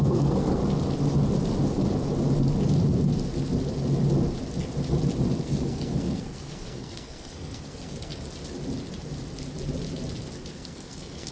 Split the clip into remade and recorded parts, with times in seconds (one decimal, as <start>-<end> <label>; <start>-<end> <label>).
0.0-0.6 remade; 0.6-5.4 recorded; 5.4-8.1 remade; 8.1-10.5 recorded; 10.5-11.3 remade